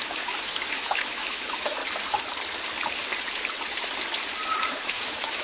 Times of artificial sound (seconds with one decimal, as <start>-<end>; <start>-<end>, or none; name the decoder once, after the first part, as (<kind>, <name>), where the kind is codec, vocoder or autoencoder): 0.0-1.8 (autoencoder, DAC-VAE); 4.7-5.4